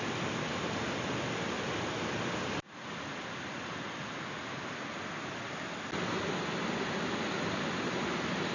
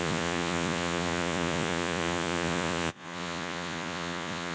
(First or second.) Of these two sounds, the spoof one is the second